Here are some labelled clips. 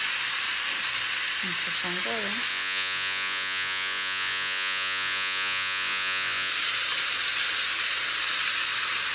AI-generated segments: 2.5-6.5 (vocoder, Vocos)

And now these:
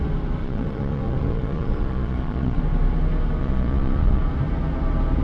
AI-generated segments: 0.4-2.6 (vocoder, Vocos); 3.4-4.2

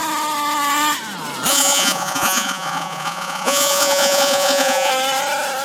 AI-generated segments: 1.5-4.9 (vocoder, Vocos)

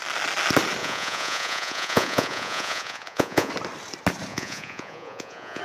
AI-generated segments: 0.8-3.5 (vocoder, Vocos); 4.3-5.6

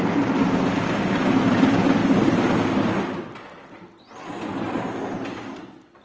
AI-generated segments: none

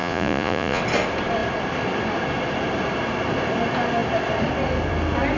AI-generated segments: 0.0-0.8 (vocoder, Vocos)

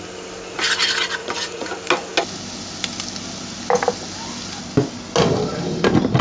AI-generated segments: 1.2-1.7 (vocoder, Vocos)

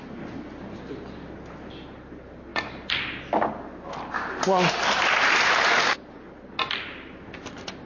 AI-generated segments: none